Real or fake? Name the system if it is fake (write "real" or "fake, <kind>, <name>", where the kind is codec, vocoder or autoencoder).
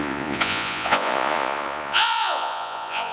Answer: fake, vocoder, Vocos